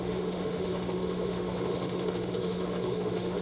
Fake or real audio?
fake